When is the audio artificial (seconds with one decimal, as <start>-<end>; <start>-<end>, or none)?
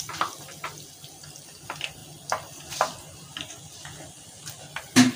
none